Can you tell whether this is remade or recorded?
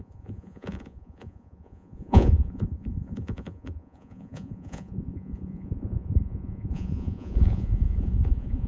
remade